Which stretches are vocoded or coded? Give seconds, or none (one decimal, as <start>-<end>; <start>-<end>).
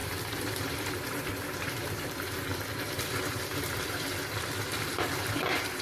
0.0-5.8